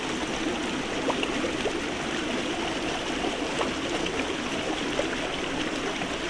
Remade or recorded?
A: recorded